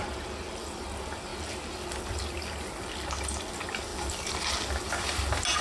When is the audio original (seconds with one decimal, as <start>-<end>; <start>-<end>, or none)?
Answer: 0.0-5.6